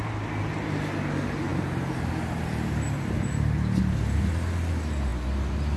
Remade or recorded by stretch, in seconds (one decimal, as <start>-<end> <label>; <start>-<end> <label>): 0.0-5.8 recorded